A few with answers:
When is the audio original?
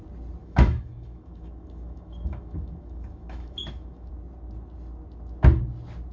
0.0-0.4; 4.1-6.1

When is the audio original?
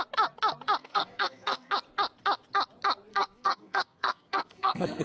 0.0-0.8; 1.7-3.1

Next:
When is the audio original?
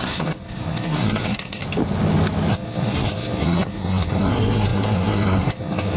1.6-2.5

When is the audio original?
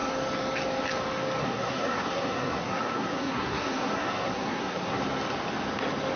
0.0-1.4; 5.0-6.2